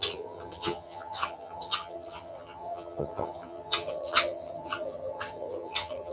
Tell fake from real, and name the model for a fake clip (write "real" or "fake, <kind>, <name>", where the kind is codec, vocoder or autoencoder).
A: fake, vocoder, HiFi-GAN